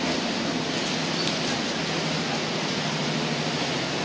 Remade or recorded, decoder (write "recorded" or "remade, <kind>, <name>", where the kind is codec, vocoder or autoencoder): remade, vocoder, BigVGAN v2